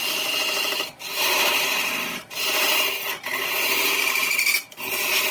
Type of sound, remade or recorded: remade